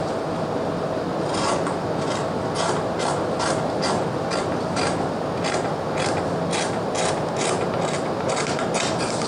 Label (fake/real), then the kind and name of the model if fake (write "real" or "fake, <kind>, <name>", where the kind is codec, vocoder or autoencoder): real